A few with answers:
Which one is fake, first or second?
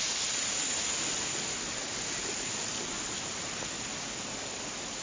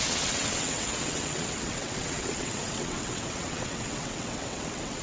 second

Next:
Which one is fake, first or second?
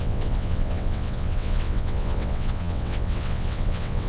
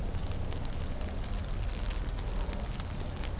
first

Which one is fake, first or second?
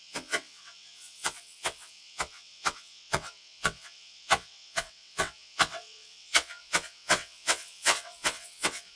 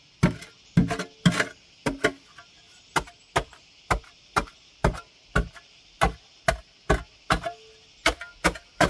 first